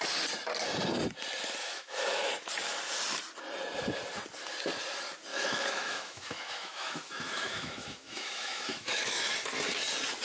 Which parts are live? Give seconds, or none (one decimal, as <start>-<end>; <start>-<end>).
0.0-1.6; 2.3-5.3; 9.3-10.2